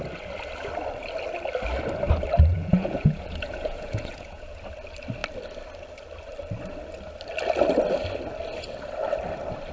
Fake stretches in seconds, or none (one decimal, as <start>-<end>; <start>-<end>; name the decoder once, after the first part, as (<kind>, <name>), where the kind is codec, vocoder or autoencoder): 2.5-4.6 (vocoder, Vocos)